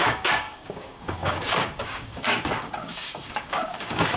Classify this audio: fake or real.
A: fake